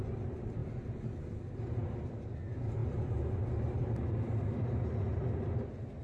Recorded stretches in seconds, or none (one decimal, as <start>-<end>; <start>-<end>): 0.0-6.0